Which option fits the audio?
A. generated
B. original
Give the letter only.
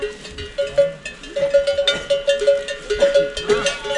B